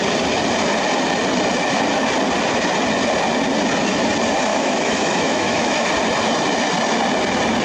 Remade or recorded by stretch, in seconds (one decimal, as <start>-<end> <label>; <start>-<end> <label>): 0.0-4.5 recorded; 4.5-5.9 remade; 5.9-7.6 recorded